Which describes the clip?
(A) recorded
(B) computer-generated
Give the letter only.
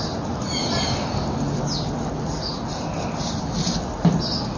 A